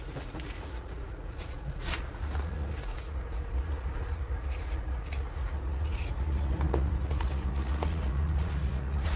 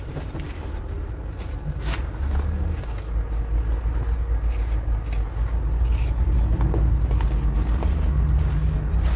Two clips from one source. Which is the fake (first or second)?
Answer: first